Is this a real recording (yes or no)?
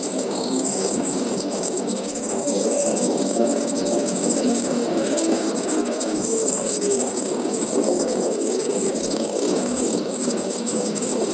no